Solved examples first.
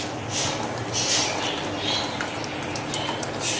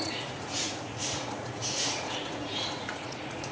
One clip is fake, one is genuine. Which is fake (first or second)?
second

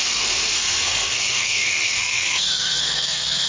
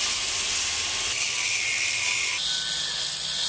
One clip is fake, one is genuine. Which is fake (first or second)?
first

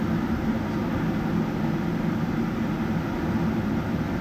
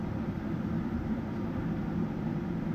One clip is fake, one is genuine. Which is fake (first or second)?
second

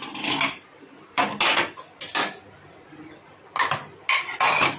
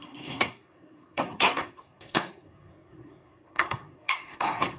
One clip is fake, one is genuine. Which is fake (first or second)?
second